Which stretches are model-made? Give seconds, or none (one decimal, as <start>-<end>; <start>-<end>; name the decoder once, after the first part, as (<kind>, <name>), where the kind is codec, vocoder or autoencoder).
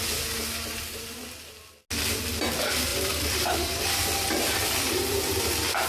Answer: 2.9-5.5 (vocoder, BigVGAN v2)